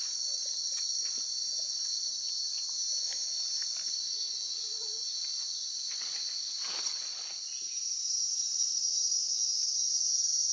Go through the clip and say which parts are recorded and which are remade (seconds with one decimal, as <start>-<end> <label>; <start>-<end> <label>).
0.0-10.5 recorded